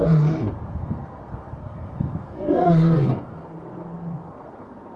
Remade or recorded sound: remade